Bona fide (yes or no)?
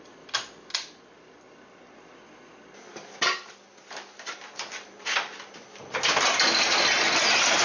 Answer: yes